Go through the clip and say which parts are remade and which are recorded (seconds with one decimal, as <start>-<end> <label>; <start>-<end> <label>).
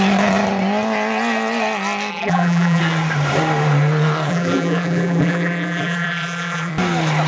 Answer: 0.0-2.1 recorded; 2.1-2.8 remade; 2.8-4.3 recorded; 4.3-6.7 remade; 6.7-7.3 recorded